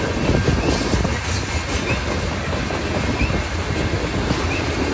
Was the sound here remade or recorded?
recorded